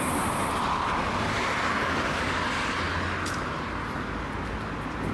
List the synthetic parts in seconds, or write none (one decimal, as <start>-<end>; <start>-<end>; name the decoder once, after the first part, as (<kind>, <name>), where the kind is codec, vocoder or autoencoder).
1.8-2.3 (codec, DAC)